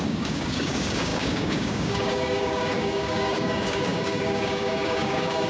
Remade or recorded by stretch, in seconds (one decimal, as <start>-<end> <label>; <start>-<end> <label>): 0.0-5.5 remade